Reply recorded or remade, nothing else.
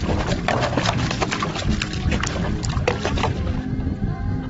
recorded